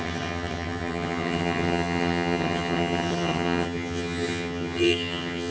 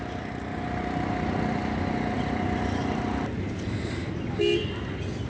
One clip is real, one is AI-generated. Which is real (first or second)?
second